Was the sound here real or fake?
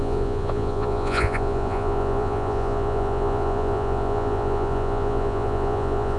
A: fake